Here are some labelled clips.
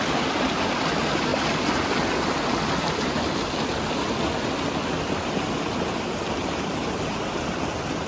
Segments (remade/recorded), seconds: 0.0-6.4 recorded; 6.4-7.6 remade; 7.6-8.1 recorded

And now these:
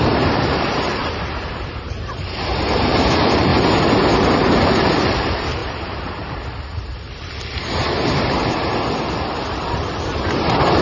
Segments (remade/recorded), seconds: 0.0-3.5 remade; 3.5-4.2 recorded; 4.2-8.7 remade; 8.7-9.7 recorded; 9.7-10.8 remade

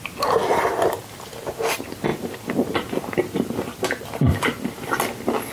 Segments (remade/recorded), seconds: 0.0-2.1 recorded; 2.1-5.1 remade; 5.1-5.5 recorded